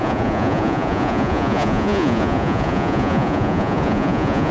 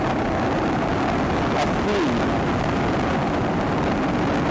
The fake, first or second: first